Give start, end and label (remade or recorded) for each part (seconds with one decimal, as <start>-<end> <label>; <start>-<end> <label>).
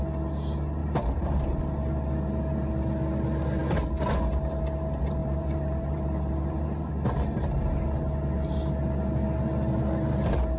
0.0-0.8 recorded; 0.8-1.6 remade; 1.6-5.2 recorded; 5.2-6.9 remade; 6.9-10.6 recorded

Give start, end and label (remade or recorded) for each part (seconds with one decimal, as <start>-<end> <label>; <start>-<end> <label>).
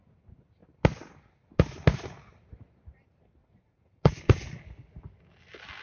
0.0-3.4 recorded; 3.4-4.2 remade; 4.2-5.8 recorded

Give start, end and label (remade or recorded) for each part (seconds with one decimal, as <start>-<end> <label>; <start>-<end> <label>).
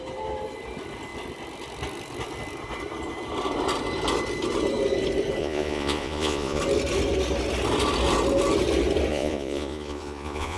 0.0-5.4 recorded; 5.4-6.6 remade; 6.6-9.1 recorded; 9.1-10.6 remade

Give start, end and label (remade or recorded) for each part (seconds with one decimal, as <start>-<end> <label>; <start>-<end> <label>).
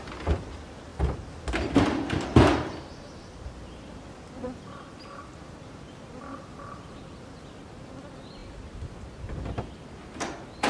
0.0-5.2 recorded; 5.2-6.1 remade; 6.1-10.7 recorded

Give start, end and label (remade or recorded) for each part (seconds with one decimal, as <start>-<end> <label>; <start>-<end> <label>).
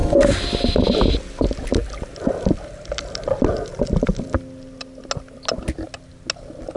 0.0-6.8 recorded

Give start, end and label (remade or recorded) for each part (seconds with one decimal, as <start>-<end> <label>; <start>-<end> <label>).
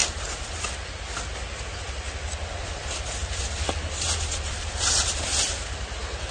0.0-6.3 recorded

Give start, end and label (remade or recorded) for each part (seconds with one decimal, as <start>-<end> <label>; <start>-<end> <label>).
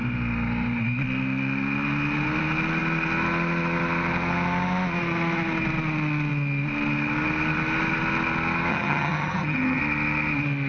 0.0-8.7 recorded; 8.7-9.8 remade; 9.8-10.7 recorded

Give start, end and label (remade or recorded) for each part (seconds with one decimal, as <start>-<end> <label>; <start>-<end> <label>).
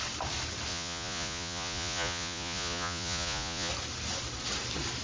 0.0-0.7 recorded; 0.7-3.7 remade; 3.7-5.0 recorded